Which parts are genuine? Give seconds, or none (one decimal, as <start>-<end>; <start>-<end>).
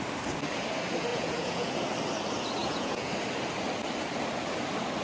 0.0-1.1; 1.7-2.6; 3.1-5.0